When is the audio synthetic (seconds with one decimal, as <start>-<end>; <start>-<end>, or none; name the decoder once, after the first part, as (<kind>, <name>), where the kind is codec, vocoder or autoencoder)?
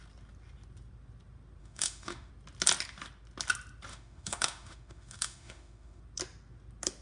1.6-2.3 (autoencoder, DAC-VAE); 3.9-6.0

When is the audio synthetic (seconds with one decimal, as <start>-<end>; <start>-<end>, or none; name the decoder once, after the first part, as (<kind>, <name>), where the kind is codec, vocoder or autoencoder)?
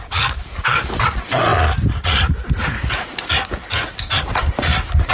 none